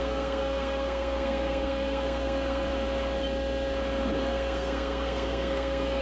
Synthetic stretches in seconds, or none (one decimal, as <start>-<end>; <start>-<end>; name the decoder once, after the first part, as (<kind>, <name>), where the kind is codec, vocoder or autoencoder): 0.0-2.7 (codec, SNAC); 4.2-6.0